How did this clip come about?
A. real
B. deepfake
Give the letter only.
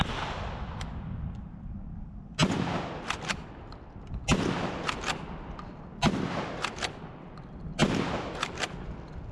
A